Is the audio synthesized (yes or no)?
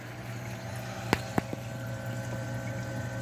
no